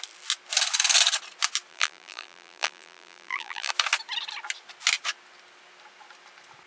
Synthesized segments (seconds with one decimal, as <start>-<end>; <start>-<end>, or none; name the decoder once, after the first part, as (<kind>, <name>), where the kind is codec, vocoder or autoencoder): 1.7-3.7 (vocoder, BigVGAN v2)